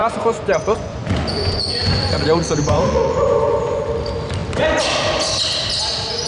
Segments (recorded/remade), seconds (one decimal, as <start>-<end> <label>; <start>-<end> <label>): 0.0-3.8 remade; 3.8-6.3 recorded